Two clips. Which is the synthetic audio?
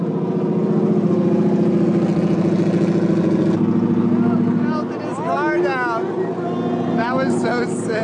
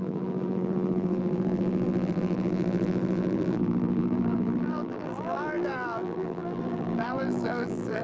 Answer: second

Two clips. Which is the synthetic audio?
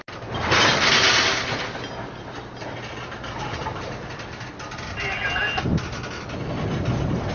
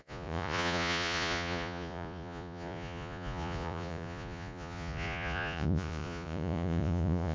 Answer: second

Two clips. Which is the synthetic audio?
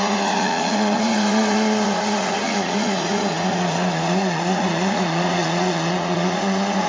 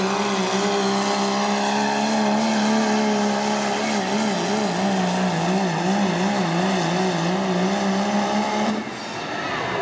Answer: first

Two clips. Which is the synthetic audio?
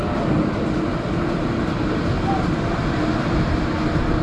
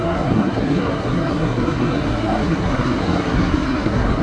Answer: second